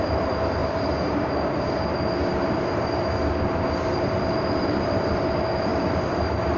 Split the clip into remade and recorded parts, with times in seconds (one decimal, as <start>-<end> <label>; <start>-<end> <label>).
0.0-0.6 remade; 0.6-3.7 recorded; 3.7-6.6 remade